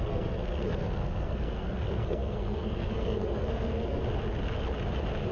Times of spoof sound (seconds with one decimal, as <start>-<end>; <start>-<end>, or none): 0.0-4.0